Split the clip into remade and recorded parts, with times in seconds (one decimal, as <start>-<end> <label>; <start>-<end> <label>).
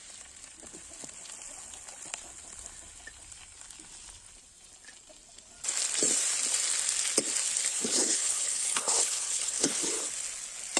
0.0-7.7 recorded; 7.7-10.0 remade; 10.0-10.8 recorded